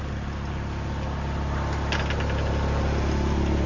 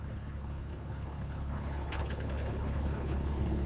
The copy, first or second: second